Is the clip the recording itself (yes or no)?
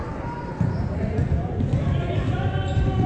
yes